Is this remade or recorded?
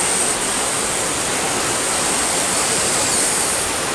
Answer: recorded